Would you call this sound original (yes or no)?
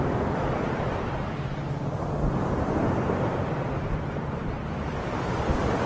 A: no